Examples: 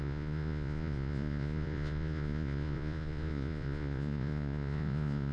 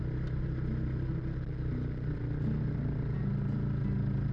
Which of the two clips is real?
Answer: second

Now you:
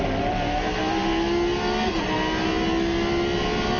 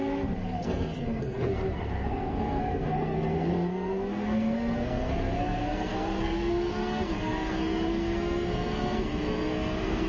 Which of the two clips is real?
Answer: first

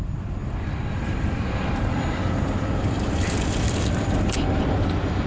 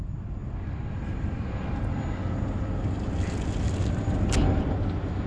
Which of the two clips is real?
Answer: second